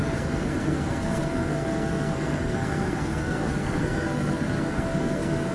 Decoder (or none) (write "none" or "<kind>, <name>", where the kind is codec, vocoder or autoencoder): codec, SNAC